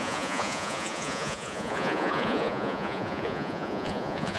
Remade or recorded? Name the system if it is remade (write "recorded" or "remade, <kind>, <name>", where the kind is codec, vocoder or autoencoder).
remade, vocoder, Vocos